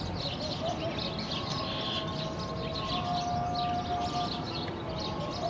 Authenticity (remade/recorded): recorded